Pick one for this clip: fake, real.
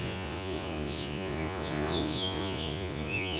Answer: fake